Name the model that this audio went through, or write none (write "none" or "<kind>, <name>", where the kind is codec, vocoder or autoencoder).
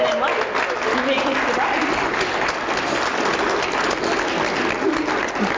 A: none